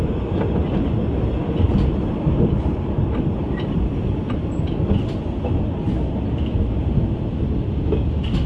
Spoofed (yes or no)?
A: no